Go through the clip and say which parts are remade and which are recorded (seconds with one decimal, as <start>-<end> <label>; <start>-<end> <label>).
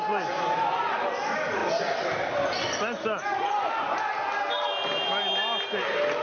0.0-6.2 recorded